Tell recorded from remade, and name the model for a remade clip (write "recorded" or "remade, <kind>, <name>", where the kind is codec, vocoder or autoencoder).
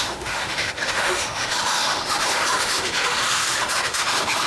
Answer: remade, autoencoder, DAC-VAE